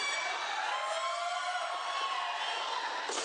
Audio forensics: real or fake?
real